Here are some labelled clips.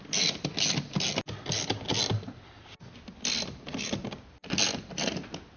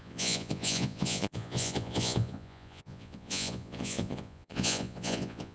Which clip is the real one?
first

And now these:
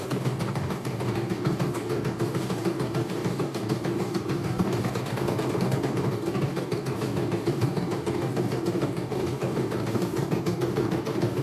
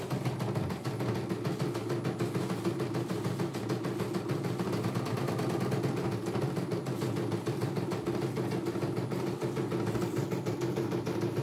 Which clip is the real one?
second